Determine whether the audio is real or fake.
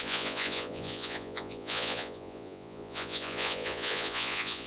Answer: fake